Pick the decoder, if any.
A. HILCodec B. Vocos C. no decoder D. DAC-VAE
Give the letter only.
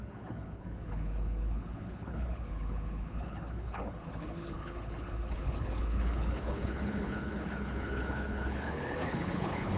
A